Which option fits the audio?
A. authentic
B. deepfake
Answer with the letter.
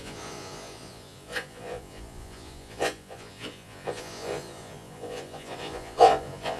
B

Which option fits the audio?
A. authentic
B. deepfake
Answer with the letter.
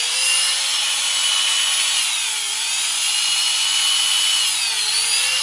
B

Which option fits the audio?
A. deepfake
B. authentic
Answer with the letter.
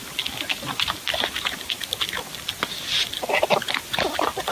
B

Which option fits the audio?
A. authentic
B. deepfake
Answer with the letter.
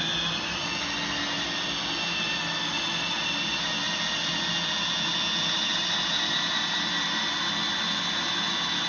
A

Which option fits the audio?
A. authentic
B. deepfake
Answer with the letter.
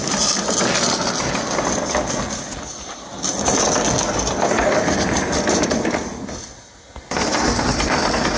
A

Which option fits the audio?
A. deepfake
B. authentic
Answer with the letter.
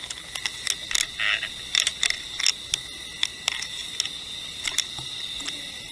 B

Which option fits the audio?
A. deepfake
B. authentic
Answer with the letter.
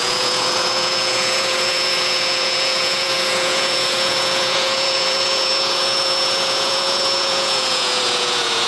A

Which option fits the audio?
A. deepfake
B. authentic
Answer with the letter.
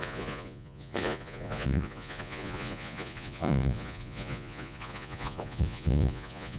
A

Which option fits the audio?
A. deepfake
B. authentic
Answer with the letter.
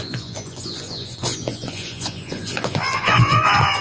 A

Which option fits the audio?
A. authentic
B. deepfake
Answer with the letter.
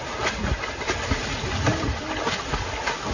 A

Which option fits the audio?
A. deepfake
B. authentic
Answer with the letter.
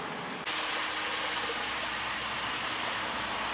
B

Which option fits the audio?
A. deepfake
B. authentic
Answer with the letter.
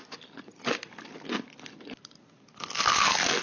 B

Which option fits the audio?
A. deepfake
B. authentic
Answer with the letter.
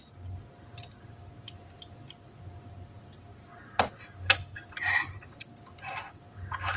B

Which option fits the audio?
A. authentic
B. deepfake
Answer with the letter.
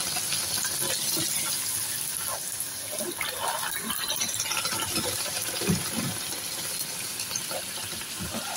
A